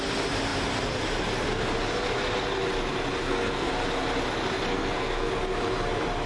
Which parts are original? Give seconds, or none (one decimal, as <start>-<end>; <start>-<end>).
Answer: 0.0-3.2; 3.7-4.7; 5.3-6.3

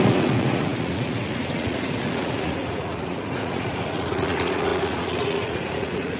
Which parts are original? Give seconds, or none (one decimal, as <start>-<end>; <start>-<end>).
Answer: none